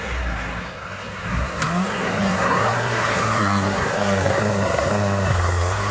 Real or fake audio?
fake